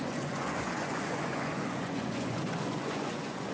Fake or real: fake